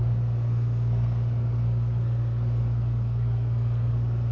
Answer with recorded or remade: remade